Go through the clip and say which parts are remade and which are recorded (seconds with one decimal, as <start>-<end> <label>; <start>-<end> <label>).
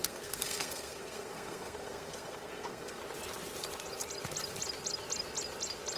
0.0-3.0 remade; 3.0-6.0 recorded